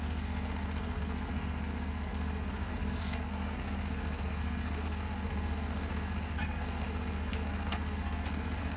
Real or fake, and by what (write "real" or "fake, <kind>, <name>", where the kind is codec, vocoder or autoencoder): fake, codec, SNAC